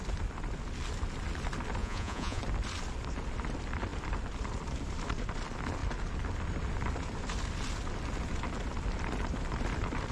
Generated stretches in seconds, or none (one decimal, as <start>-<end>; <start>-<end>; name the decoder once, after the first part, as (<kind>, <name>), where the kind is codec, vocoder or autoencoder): 1.8-2.4 (vocoder, Vocos)

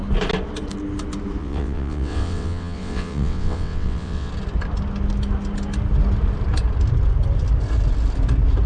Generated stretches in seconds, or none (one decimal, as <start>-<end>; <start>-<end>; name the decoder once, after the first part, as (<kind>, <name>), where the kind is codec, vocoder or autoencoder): 1.4-4.3 (vocoder, WaveNeXt)

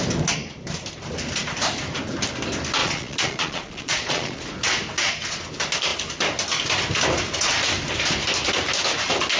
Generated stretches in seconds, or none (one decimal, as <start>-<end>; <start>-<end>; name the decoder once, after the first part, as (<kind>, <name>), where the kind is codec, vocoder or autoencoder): 2.8-4.4 (vocoder, Vocos)

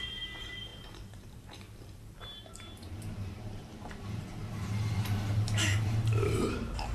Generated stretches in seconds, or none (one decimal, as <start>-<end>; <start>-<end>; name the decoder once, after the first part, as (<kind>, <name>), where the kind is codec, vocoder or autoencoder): 0.0-4.4 (vocoder, BigVGAN v2); 5.3-6.9